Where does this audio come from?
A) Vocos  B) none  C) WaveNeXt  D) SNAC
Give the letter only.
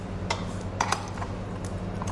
B